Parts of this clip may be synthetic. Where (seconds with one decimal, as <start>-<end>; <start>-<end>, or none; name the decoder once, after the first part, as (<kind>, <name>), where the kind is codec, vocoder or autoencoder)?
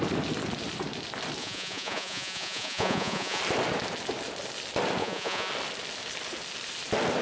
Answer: 1.4-3.4 (vocoder, Vocos); 5.0-5.5